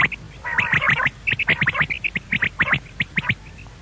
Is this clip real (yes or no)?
yes